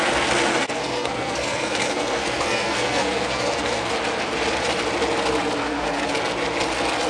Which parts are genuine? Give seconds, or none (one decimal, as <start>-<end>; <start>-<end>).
0.0-0.5; 3.9-5.6; 6.1-7.1